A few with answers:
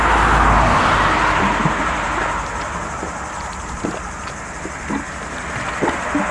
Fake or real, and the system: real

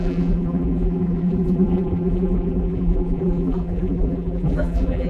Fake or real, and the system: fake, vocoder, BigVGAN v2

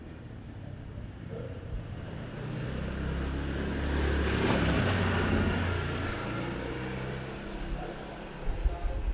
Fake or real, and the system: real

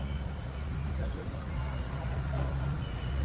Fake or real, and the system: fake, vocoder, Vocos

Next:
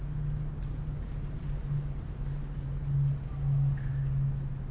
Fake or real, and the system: real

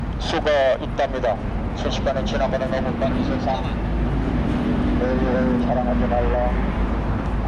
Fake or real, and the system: real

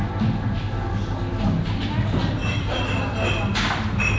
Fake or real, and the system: real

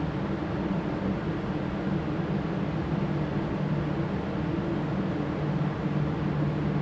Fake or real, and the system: real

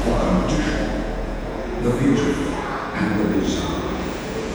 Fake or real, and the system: fake, vocoder, Vocos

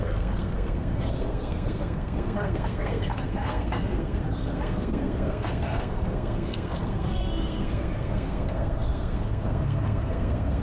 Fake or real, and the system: fake, codec, SNAC